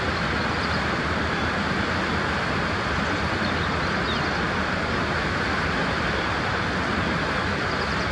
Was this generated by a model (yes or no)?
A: no